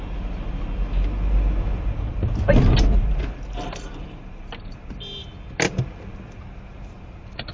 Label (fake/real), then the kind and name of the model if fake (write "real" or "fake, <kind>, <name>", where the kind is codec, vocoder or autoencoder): real